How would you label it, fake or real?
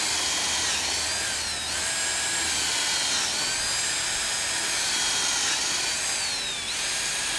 real